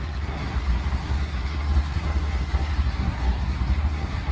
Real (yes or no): no